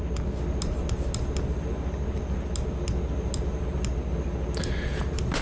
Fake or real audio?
real